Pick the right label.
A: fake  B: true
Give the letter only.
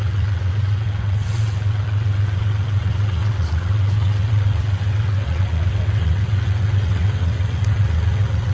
A